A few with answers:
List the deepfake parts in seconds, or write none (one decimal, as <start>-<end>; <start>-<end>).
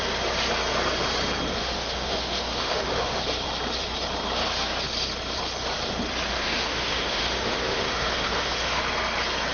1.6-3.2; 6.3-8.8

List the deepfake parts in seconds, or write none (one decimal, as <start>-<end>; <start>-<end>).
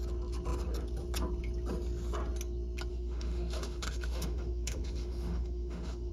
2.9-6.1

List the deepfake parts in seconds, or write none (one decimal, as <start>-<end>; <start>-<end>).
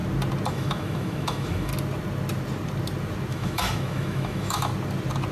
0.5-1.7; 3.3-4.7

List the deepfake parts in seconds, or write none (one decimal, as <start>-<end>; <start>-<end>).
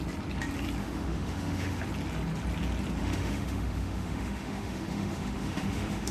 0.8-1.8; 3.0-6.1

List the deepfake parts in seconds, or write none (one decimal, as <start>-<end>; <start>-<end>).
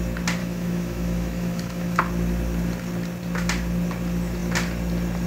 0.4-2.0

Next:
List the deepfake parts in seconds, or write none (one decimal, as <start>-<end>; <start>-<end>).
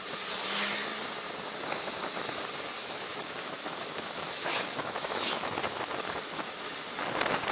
2.8-6.5